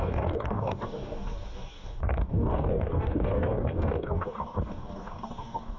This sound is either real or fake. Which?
fake